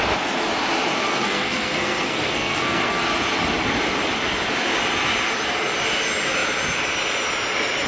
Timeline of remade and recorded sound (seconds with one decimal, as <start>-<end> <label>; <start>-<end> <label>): 0.0-1.0 recorded; 1.0-3.0 remade; 3.0-7.9 recorded